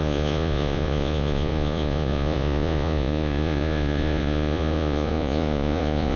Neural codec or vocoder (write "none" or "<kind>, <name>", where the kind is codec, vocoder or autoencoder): vocoder, Vocos